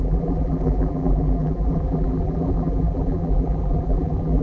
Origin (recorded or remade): remade